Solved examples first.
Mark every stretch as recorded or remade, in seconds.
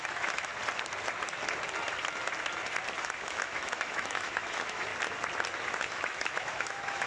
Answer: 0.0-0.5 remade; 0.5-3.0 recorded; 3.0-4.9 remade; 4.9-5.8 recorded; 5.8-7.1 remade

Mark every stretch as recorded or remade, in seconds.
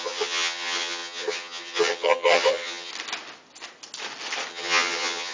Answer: 0.0-2.9 remade; 2.9-4.5 recorded; 4.5-5.3 remade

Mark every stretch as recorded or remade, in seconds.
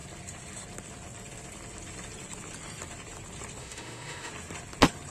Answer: 0.0-3.6 recorded; 3.6-4.3 remade; 4.3-5.1 recorded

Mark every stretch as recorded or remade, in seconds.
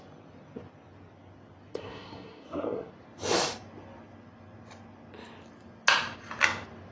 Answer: 0.0-1.7 recorded; 1.7-2.9 remade; 2.9-6.9 recorded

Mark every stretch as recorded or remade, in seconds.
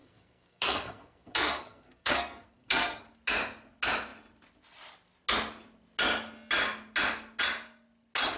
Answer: 0.0-3.0 remade; 3.0-8.4 recorded